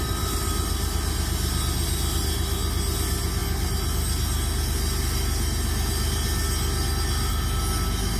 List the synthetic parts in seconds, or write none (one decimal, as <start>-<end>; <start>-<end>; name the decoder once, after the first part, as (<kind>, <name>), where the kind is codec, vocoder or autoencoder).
none